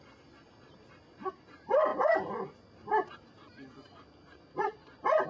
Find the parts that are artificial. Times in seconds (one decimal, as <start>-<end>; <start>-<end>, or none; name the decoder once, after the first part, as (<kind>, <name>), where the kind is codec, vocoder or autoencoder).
none